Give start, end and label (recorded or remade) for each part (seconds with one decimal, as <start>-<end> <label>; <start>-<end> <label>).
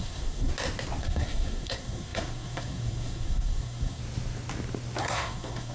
0.0-0.5 remade; 0.5-1.0 recorded; 1.0-4.0 remade; 4.0-5.0 recorded; 5.0-5.7 remade